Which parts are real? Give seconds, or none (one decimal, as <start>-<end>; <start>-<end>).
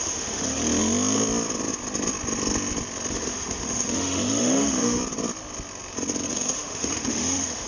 0.6-3.1; 5.0-6.3